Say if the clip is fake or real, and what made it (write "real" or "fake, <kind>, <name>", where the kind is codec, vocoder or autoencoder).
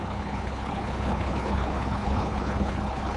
fake, codec, HILCodec